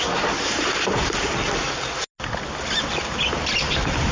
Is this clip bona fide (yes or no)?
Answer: yes